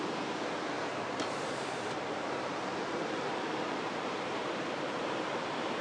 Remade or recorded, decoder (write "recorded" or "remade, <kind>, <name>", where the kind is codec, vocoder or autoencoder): remade, vocoder, BigVGAN v2